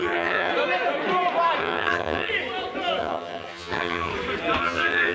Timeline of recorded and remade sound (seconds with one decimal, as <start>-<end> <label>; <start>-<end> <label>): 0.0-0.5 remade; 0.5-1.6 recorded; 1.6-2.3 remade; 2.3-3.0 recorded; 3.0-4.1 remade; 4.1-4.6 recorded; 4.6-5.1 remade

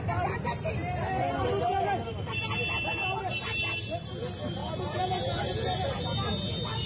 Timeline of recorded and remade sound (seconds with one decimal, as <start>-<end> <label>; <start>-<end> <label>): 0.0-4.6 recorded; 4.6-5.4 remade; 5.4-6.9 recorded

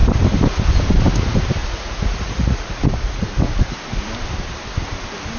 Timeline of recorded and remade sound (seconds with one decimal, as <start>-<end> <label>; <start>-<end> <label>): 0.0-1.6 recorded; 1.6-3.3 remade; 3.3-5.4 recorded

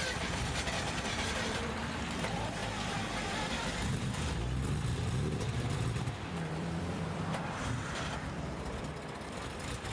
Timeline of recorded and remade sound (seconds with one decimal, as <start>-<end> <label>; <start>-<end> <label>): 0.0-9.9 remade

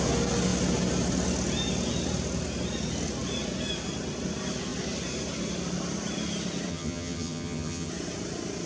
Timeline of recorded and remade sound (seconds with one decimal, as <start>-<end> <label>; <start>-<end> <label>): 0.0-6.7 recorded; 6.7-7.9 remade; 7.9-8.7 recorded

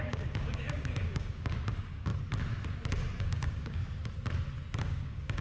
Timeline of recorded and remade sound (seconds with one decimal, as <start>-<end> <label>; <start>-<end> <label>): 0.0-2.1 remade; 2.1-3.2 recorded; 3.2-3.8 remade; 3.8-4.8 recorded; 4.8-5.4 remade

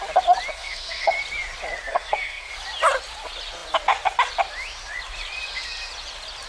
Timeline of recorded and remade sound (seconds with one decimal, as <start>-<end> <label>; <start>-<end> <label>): 0.0-0.5 recorded; 0.5-1.1 remade; 1.1-1.9 recorded; 1.9-2.5 remade; 2.5-6.5 recorded

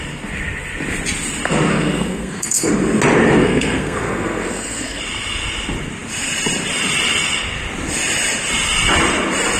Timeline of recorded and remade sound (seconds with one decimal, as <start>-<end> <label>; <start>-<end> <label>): 0.0-1.7 recorded; 1.7-2.7 remade; 2.7-3.4 recorded; 3.4-5.0 remade; 5.0-9.6 recorded